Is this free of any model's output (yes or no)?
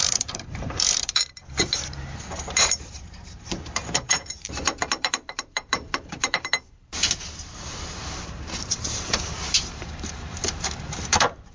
no